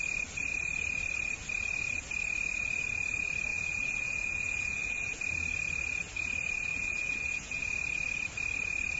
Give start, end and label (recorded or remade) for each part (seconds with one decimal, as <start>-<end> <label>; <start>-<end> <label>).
0.0-3.5 recorded; 3.5-5.2 remade; 5.2-6.7 recorded; 6.7-7.6 remade; 7.6-9.0 recorded